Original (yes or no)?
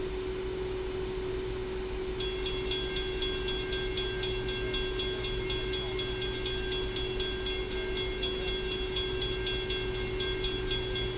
yes